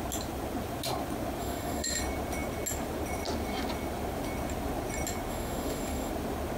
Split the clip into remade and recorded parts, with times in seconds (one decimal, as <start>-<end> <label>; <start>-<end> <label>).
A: 0.0-1.4 recorded; 1.4-2.0 remade; 2.0-5.3 recorded; 5.3-6.1 remade; 6.1-6.6 recorded